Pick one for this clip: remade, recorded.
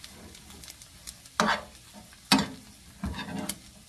recorded